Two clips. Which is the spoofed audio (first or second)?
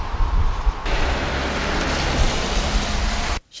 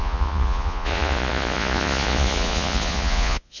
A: second